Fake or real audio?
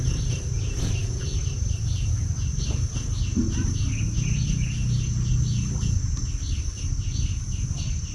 real